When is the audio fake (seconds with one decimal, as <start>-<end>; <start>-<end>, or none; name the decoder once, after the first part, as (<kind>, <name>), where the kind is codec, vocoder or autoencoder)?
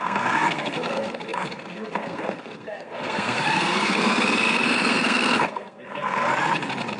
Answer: 0.0-6.3 (codec, SNAC)